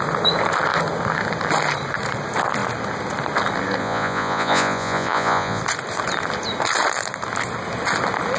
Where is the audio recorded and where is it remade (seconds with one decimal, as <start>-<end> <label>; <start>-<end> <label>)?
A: 0.0-3.8 recorded; 3.8-5.6 remade; 5.6-8.4 recorded